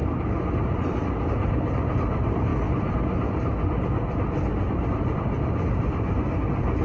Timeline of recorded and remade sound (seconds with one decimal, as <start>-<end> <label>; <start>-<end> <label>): 0.0-1.3 recorded; 1.3-2.5 remade; 2.5-4.7 recorded; 4.7-6.8 remade

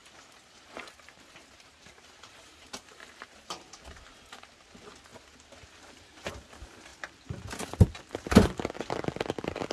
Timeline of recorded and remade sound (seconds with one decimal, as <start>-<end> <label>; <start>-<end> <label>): 0.0-3.6 remade; 3.6-9.7 recorded

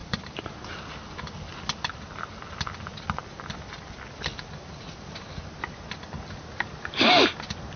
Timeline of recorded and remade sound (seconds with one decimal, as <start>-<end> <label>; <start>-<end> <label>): 0.0-0.5 remade; 0.5-7.8 recorded

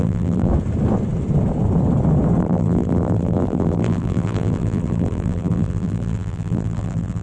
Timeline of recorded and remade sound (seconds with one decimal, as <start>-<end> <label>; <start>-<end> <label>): 0.0-0.5 remade; 0.5-2.4 recorded; 2.4-7.2 remade

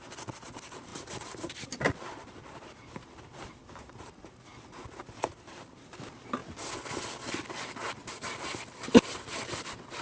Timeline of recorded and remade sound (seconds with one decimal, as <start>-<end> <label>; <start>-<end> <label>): 0.0-4.5 remade; 4.5-5.0 recorded; 5.0-6.4 remade; 6.4-6.9 recorded; 6.9-10.0 remade

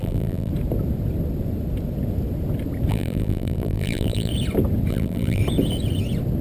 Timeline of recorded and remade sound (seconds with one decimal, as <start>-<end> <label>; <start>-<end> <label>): 0.0-0.5 remade; 0.5-2.9 recorded; 2.9-4.3 remade; 4.3-4.9 recorded; 4.9-5.4 remade; 5.4-6.4 recorded

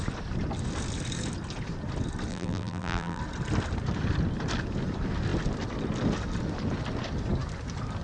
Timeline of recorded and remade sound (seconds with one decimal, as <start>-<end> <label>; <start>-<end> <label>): 0.0-2.3 recorded; 2.3-3.2 remade; 3.2-8.0 recorded

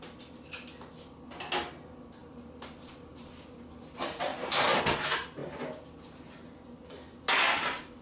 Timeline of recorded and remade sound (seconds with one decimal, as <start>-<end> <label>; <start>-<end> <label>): 0.0-2.2 recorded; 2.2-3.3 remade; 3.3-4.3 recorded; 4.3-4.8 remade; 4.8-5.4 recorded; 5.4-6.5 remade; 6.5-8.0 recorded